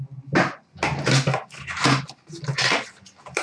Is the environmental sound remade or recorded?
recorded